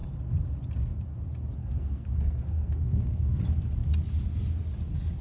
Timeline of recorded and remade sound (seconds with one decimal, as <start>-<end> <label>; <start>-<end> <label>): 0.0-1.6 recorded; 1.6-3.4 remade; 3.4-5.2 recorded